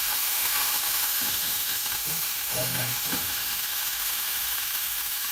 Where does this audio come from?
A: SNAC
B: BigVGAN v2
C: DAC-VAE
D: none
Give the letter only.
C